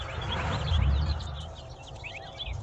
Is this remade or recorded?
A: recorded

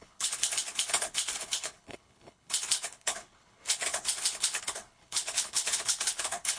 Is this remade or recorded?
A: remade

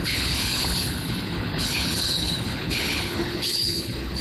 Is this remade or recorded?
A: remade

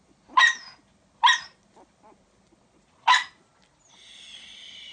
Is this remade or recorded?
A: recorded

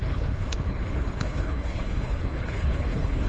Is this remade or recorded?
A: remade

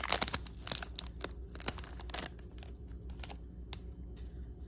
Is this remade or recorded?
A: recorded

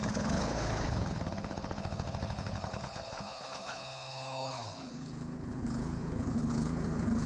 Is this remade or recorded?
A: remade